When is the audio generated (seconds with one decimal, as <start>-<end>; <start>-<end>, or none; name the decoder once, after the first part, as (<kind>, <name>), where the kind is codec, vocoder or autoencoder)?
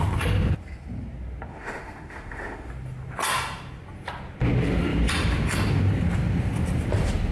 1.5-2.7 (autoencoder, DAC-VAE)